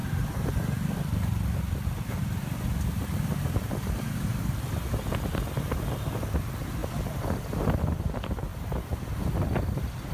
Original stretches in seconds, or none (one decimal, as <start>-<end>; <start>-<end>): 0.0-8.5